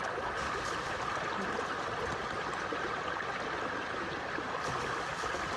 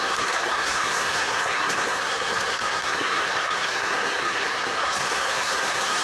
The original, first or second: first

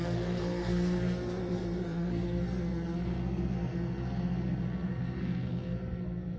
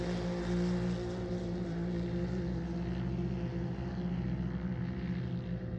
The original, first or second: second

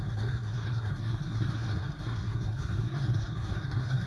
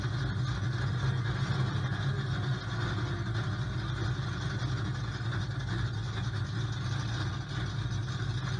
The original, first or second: second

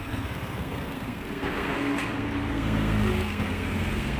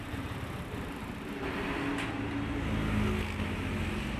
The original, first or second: second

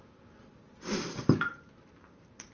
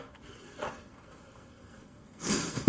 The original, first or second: first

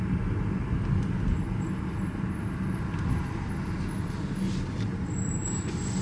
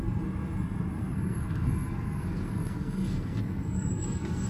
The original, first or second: first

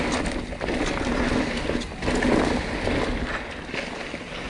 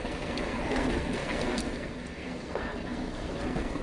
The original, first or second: first